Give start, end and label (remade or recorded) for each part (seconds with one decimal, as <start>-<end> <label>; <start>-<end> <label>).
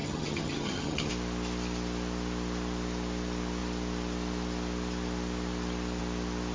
0.0-1.1 remade; 1.1-6.5 recorded